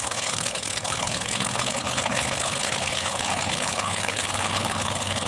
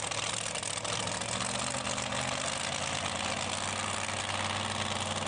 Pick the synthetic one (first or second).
first